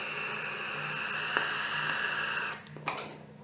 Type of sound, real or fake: real